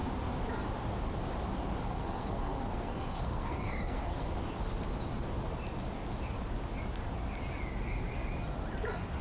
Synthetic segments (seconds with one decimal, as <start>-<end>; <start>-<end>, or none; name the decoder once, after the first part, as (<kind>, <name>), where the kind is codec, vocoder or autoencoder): 1.8-4.3 (codec, SNAC)